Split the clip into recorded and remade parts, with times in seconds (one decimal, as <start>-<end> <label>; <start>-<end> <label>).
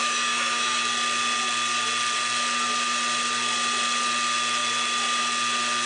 0.0-0.8 remade; 0.8-5.9 recorded